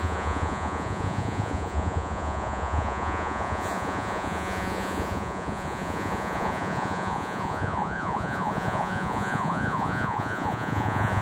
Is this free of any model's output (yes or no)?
no